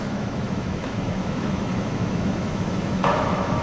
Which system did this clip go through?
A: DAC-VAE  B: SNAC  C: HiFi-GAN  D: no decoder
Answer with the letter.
A